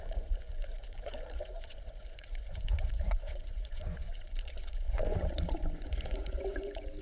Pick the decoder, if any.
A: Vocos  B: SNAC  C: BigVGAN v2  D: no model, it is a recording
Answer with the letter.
A